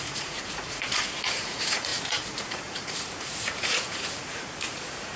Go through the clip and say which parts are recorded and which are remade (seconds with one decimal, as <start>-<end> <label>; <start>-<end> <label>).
0.0-5.2 remade